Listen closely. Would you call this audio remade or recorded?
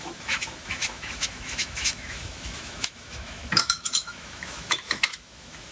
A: remade